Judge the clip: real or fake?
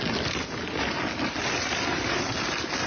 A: real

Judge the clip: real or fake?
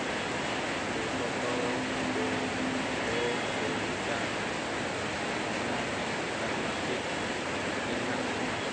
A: real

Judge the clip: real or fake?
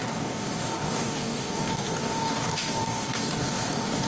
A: fake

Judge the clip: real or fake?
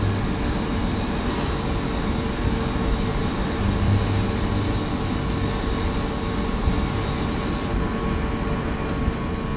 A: real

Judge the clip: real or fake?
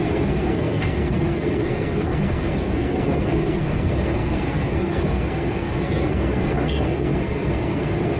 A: fake